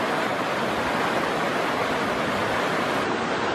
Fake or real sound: real